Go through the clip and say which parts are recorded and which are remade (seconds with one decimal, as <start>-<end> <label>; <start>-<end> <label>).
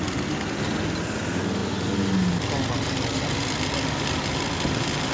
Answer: 0.0-5.1 recorded